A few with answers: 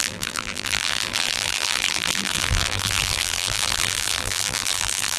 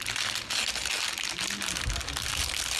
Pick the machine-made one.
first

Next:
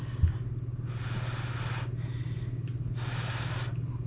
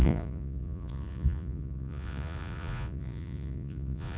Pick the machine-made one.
second